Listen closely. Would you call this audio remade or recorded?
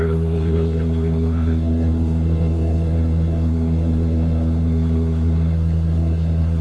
remade